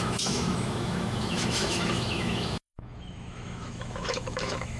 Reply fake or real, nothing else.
fake